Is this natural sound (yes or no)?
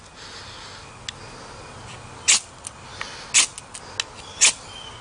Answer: yes